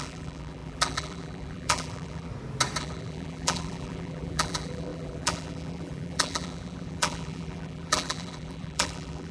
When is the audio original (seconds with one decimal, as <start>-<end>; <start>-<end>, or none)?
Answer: 2.3-2.8